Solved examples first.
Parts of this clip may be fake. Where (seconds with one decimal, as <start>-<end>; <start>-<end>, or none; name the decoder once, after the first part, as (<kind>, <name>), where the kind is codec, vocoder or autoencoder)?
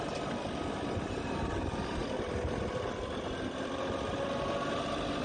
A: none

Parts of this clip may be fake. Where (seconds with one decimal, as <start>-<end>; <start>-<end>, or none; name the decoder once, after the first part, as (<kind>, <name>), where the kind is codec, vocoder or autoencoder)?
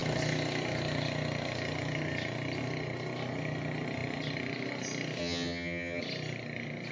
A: 5.2-6.0 (vocoder, HiFi-GAN)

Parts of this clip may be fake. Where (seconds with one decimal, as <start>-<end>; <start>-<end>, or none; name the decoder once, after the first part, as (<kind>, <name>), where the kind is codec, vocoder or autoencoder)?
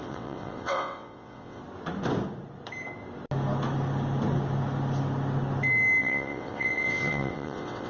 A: 0.0-1.6 (vocoder, WaveNeXt); 6.0-7.9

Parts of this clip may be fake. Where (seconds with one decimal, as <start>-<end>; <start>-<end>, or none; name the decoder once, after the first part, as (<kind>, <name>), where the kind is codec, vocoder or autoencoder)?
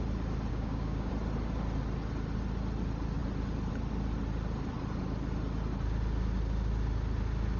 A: 0.5-1.1 (codec, DAC)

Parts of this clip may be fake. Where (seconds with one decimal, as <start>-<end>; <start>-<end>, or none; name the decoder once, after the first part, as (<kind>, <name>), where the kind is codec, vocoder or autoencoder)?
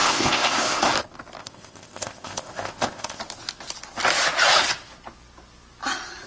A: 0.0-0.9 (codec, ZipCodec); 1.4-3.2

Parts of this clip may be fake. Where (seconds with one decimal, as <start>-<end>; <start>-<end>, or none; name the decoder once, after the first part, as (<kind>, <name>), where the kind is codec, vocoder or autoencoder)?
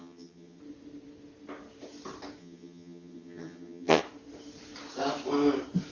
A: 0.0-0.6 (vocoder, HiFi-GAN); 2.4-4.0